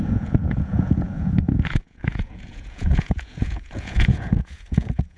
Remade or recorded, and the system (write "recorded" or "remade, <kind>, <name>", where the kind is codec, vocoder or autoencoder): remade, vocoder, Vocos